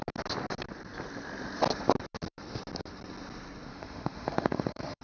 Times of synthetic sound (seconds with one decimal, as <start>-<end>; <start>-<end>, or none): 3.7-5.0

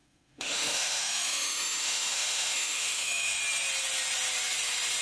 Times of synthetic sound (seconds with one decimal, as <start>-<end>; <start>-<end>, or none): 0.0-3.4

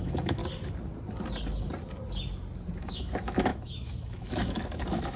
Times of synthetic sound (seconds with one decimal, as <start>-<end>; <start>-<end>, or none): 0.0-0.4; 2.8-5.2

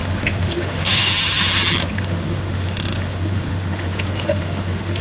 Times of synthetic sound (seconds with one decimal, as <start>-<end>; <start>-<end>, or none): 0.0-1.1; 1.8-5.0

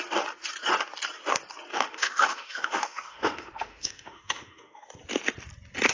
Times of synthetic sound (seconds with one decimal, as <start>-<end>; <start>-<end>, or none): 1.7-4.9

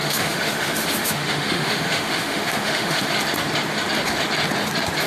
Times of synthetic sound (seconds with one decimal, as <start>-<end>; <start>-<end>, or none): 0.0-3.1

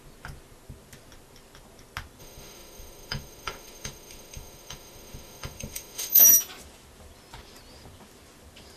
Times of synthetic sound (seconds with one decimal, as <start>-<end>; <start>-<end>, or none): 2.2-6.2

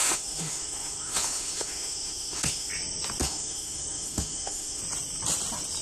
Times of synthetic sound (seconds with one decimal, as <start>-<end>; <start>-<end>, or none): 0.0-2.7; 3.2-4.8